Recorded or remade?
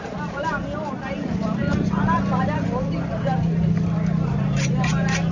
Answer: recorded